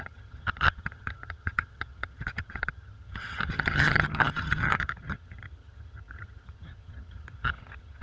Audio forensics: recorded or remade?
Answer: remade